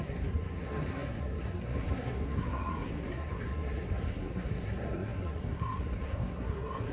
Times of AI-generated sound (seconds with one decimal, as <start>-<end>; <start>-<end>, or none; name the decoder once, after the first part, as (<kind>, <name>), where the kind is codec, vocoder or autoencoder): 0.0-6.9 (codec, SNAC)